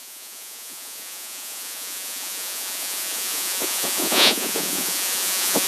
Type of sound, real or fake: fake